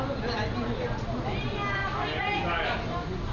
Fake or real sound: real